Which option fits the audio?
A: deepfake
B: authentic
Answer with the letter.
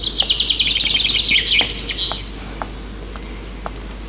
B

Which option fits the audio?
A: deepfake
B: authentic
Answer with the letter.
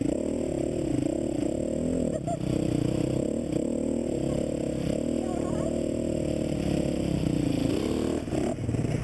B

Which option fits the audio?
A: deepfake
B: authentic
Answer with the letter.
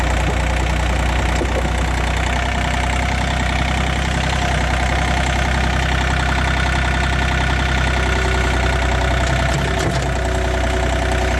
B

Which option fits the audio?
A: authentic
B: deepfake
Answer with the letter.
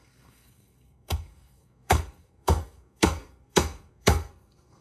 B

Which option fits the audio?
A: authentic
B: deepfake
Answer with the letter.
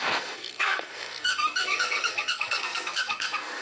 B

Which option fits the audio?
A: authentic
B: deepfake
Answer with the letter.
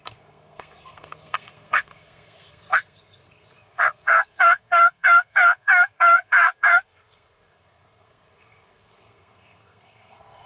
B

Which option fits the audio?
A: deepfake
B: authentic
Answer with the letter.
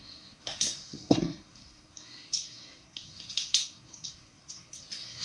A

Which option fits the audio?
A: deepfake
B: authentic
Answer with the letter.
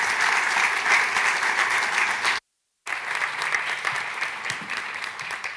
B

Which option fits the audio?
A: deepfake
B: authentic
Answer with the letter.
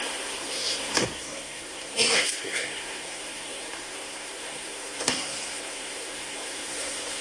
A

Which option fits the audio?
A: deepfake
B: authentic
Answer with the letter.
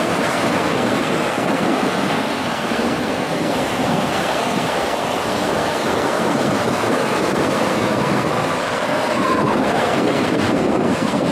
A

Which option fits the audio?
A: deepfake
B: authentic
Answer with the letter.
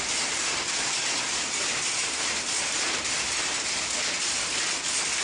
B